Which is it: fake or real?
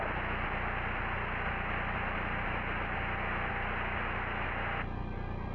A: real